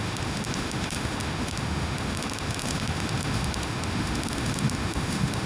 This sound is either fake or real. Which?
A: fake